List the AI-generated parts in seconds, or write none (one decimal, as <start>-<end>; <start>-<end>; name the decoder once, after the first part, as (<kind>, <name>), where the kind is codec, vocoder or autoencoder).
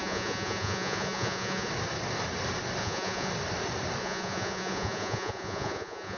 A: 0.0-1.7 (vocoder, Vocos); 2.8-3.3; 4.0-6.2